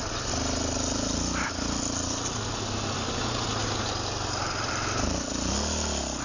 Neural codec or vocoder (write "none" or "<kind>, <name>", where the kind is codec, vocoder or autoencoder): none